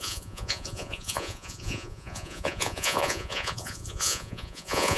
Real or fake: fake